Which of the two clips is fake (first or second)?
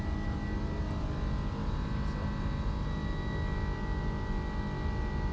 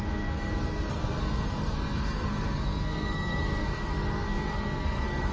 second